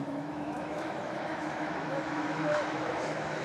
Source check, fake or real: fake